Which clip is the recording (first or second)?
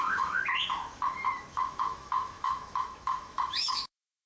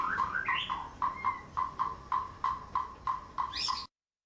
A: second